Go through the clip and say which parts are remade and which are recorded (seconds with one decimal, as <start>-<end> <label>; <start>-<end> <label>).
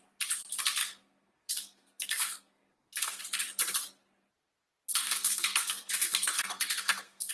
0.0-0.8 recorded; 0.8-3.2 remade; 3.2-4.9 recorded; 4.9-7.3 remade